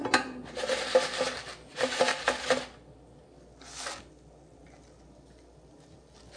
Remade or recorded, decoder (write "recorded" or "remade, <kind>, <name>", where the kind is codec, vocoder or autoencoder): recorded